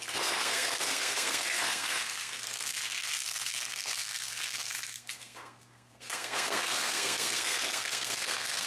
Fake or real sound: fake